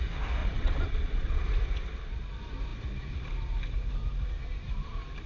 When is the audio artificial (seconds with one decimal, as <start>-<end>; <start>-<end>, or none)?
0.4-1.5